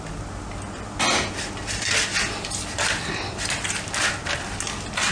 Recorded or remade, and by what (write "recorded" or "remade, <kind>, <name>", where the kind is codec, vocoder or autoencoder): recorded